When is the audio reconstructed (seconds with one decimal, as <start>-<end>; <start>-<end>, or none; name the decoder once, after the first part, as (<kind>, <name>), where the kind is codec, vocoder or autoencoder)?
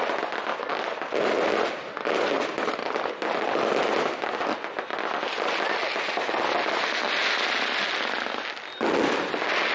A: none